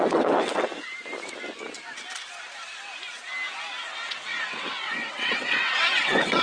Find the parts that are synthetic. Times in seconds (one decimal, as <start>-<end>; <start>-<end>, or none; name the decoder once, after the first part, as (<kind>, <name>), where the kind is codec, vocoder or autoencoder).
0.0-0.7 (vocoder, WaveNeXt); 3.8-6.4